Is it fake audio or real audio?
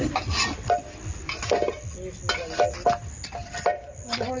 real